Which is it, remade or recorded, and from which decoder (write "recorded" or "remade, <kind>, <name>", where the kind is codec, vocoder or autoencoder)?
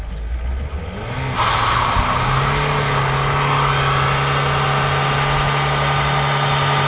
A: recorded